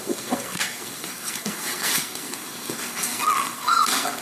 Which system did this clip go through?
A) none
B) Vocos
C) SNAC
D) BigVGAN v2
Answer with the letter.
C